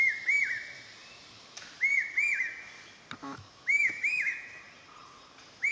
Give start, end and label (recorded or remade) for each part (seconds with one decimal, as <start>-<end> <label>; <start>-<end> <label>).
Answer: 0.0-3.2 recorded; 3.2-4.3 remade; 4.3-5.7 recorded